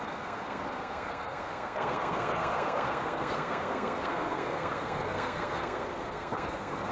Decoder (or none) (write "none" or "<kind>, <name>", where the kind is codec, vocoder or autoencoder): codec, SNAC